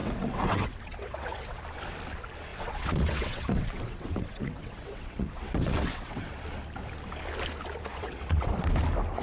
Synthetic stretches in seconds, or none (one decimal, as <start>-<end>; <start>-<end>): 0.0-1.6; 2.5-6.4; 7.9-8.5